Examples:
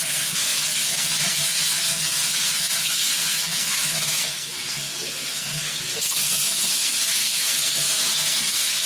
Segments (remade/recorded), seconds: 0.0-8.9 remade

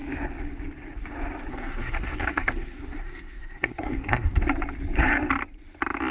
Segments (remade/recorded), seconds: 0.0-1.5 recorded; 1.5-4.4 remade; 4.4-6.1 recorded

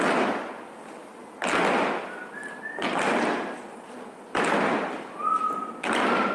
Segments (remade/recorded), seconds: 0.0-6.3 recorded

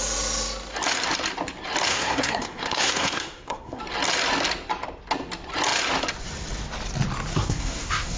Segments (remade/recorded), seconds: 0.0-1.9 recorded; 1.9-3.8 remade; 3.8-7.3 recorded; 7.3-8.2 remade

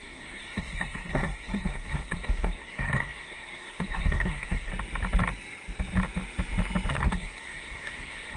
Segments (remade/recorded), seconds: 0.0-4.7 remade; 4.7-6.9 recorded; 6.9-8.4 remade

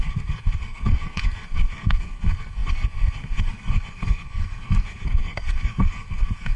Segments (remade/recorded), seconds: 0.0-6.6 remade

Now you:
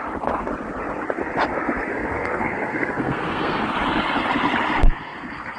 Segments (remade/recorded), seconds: 0.0-1.9 recorded; 1.9-3.7 remade; 3.7-4.8 recorded; 4.8-5.6 remade